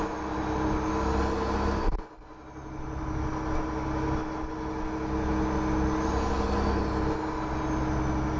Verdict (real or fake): real